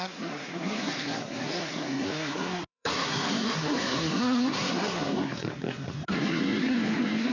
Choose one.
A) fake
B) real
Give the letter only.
A